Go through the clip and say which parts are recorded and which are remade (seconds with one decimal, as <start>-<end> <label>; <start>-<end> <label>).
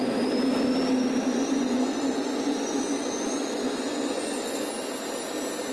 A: 0.0-1.3 recorded; 1.3-4.7 remade; 4.7-5.7 recorded